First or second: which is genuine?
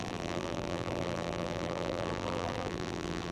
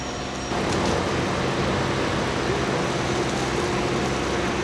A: second